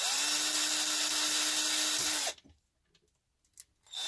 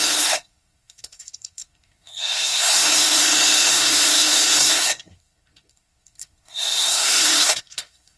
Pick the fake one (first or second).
second